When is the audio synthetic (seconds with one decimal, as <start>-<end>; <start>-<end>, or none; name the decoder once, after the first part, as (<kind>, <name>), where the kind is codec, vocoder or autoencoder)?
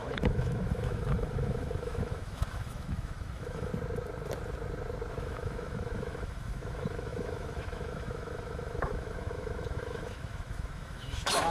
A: 0.0-3.7 (autoencoder, DAC-VAE); 5.2-11.5